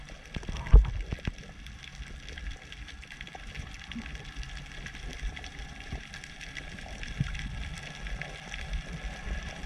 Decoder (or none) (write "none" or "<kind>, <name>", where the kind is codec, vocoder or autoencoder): vocoder, BigVGAN v2